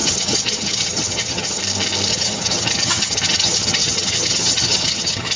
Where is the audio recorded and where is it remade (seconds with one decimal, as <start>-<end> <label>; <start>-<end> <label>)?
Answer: 0.0-1.6 remade; 1.6-2.1 recorded; 2.1-5.4 remade